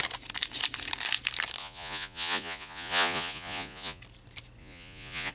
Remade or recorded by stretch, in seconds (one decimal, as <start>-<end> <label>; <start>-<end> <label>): 0.0-1.6 recorded; 1.6-4.0 remade; 4.0-4.6 recorded; 4.6-5.3 remade